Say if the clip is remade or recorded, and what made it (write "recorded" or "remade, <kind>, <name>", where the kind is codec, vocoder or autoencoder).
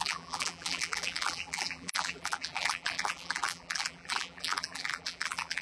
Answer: remade, vocoder, BigVGAN v2